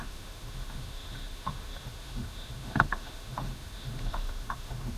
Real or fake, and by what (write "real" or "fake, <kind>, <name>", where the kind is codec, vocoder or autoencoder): fake, autoencoder, DAC-VAE